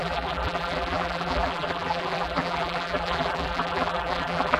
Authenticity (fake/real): fake